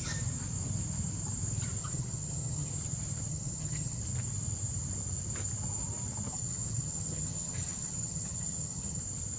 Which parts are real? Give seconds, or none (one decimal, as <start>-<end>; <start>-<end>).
0.0-1.8; 2.7-3.3; 4.0-6.3; 9.0-9.4

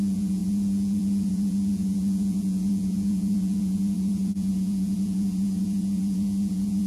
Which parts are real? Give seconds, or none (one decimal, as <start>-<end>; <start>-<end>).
none

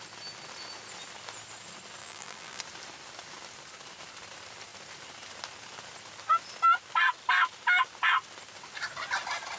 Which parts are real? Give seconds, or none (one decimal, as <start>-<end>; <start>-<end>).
0.0-2.0; 2.6-9.6

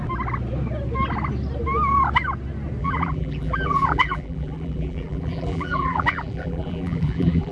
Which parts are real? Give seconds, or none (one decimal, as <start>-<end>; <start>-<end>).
0.0-2.8

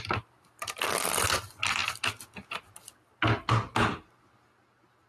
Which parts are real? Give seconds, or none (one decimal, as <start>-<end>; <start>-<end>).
0.0-5.1

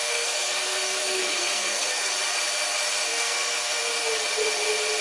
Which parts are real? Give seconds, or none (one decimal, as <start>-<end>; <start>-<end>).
2.1-3.1; 3.8-5.0